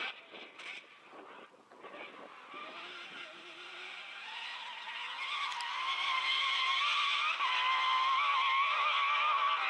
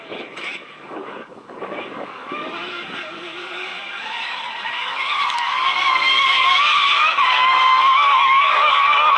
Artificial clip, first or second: second